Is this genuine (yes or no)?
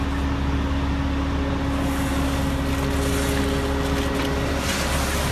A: yes